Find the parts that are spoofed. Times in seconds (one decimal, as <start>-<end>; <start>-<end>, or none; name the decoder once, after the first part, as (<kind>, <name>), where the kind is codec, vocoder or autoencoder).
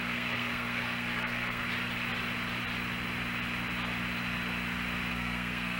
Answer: 0.0-1.6 (codec, SNAC); 5.1-5.8